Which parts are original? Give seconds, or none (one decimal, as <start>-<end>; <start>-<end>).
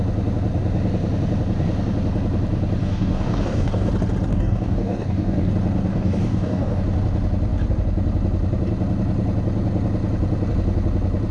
0.0-2.8; 3.9-4.3; 5.5-5.9; 6.8-11.3